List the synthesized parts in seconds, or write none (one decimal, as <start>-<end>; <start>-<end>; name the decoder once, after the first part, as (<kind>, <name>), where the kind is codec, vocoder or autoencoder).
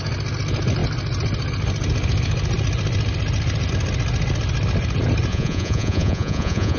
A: 5.3-6.8 (vocoder, Vocos)